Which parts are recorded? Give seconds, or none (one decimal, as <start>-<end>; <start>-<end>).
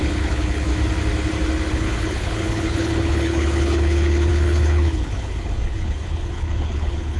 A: 0.7-1.7